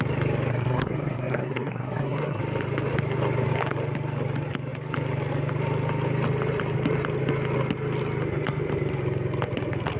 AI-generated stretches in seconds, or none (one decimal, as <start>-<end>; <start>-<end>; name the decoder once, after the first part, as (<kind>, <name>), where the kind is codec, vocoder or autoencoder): 0.5-2.4 (codec, SNAC)